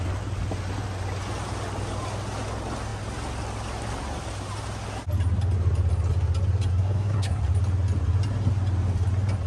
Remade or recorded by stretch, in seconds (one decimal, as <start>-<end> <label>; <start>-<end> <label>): 0.0-6.7 recorded; 6.7-7.4 remade; 7.4-9.5 recorded